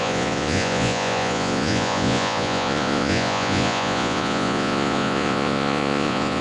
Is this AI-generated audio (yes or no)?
yes